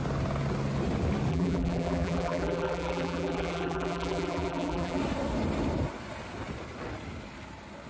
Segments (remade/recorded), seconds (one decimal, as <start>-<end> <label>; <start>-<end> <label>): 0.0-1.3 recorded; 1.3-5.0 remade; 5.0-7.9 recorded